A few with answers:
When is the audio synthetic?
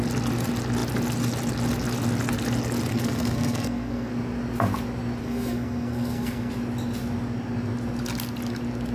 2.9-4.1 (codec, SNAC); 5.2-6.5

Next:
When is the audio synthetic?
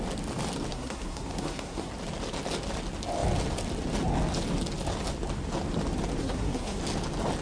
0.7-1.9 (codec, SNAC); 6.2-6.8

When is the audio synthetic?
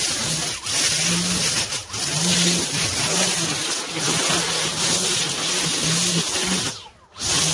none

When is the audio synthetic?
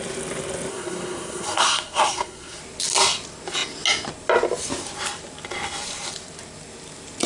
0.7-2.6 (codec, SNAC)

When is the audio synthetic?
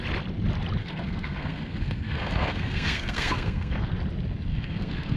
0.8-3.9 (codec, SNAC); 4.5-5.2